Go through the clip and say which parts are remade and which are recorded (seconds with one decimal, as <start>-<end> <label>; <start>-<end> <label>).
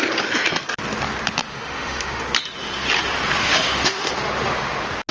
0.0-1.4 recorded; 1.4-2.2 remade; 2.2-3.4 recorded; 3.4-4.1 remade; 4.1-5.1 recorded